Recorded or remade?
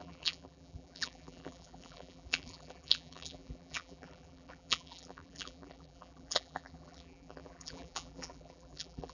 remade